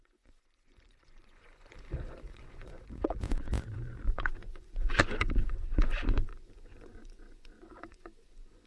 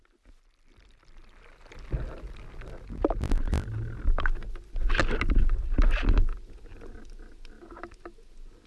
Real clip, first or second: second